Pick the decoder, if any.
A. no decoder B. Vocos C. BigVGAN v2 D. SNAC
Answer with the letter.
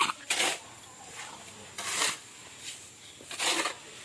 A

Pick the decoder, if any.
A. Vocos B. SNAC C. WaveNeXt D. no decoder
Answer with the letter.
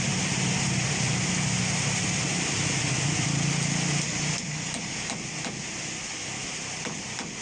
D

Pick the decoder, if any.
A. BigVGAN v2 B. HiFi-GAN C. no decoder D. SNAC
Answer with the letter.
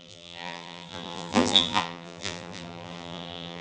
A